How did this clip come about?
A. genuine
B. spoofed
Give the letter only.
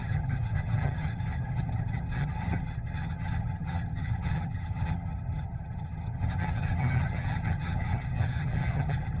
B